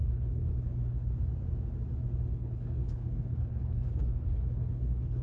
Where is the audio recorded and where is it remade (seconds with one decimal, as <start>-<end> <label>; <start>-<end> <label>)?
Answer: 0.0-1.1 remade; 1.1-2.3 recorded; 2.3-5.2 remade